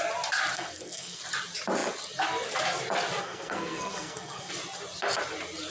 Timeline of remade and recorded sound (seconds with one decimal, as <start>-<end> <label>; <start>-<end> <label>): 0.0-0.5 recorded; 0.5-1.2 remade; 1.2-3.2 recorded; 3.2-4.5 remade; 4.5-5.7 recorded